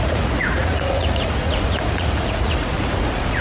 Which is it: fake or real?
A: fake